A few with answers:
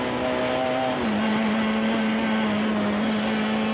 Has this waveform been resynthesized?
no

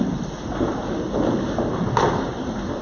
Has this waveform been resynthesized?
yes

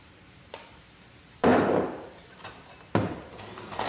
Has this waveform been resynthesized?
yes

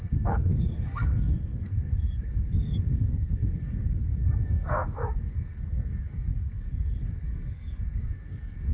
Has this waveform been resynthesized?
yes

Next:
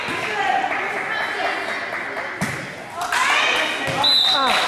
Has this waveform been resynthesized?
no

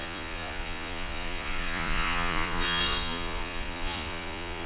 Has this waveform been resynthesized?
yes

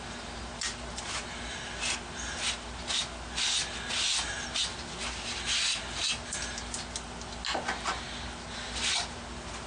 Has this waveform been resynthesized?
no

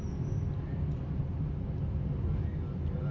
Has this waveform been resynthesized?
no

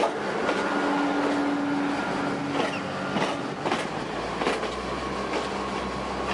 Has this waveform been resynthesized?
no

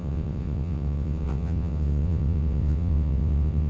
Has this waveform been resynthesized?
yes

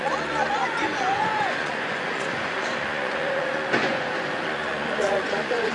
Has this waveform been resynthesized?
yes